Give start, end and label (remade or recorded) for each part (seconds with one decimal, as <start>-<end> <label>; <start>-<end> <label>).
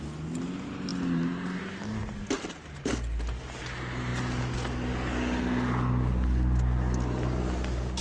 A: 0.0-8.0 recorded